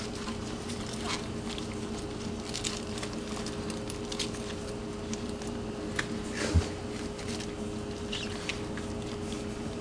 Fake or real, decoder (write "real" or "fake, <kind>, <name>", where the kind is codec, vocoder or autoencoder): real